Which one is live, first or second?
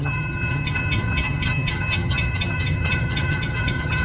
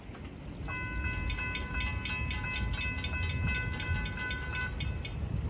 second